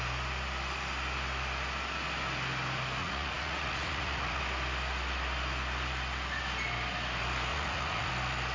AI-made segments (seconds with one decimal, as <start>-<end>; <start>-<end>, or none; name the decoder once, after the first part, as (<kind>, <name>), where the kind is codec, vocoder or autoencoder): 3.0-4.4 (vocoder, Vocos); 7.5-8.1